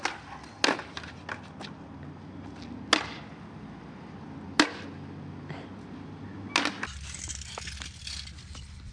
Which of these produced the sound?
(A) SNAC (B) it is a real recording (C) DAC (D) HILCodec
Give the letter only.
B